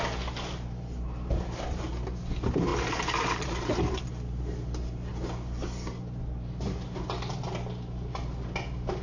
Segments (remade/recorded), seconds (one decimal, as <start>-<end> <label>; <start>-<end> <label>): 0.0-2.7 recorded; 2.7-4.0 remade; 4.0-9.0 recorded